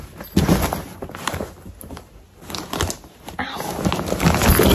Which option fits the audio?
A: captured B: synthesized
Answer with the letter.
A